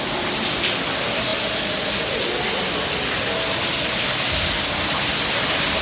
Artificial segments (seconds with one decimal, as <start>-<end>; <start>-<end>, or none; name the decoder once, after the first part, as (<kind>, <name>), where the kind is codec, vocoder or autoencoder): none